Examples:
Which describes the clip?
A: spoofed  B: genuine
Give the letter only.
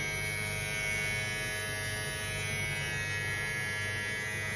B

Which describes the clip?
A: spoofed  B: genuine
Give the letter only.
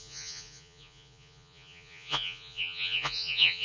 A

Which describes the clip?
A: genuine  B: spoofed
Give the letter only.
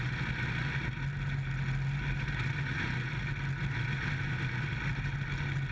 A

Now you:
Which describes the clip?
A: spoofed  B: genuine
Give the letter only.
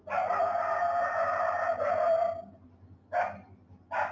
B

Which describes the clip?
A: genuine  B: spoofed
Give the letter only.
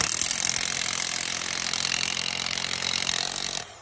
A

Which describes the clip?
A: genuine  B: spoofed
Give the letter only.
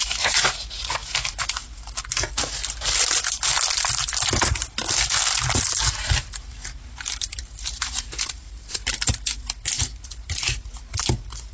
A